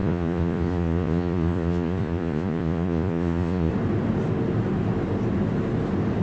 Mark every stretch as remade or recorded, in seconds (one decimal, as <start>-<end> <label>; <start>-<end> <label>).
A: 0.0-3.7 remade; 3.7-6.2 recorded